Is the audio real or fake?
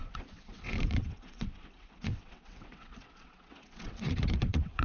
fake